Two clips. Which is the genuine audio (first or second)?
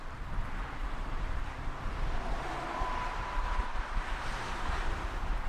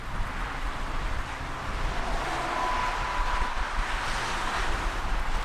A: second